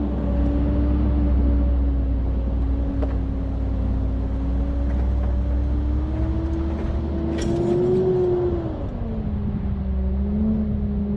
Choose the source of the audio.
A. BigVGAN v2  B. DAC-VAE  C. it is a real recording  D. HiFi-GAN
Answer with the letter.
C